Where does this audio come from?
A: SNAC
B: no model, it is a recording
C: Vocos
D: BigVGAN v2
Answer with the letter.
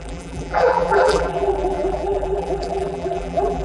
D